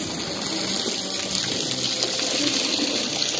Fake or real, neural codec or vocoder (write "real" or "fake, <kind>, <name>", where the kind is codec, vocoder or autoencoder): real